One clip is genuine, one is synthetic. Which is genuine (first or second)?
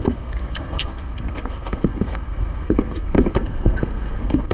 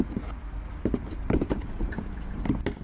second